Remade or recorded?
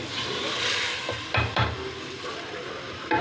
remade